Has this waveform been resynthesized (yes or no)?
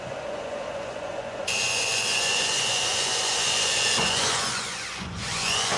yes